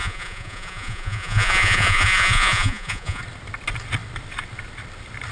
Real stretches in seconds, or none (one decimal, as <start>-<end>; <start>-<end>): 3.2-5.3